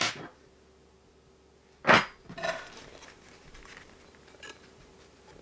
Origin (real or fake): real